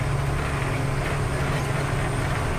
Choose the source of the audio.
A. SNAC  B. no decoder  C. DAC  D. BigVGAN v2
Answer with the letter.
B